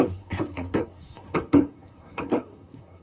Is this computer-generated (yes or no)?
yes